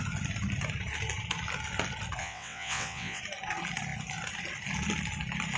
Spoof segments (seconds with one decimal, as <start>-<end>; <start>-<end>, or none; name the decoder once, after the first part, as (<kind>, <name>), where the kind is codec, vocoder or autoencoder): 2.2-3.2 (vocoder, WaveNeXt)